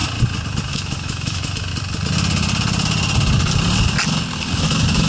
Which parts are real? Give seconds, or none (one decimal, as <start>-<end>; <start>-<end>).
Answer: 0.0-0.7; 1.7-4.6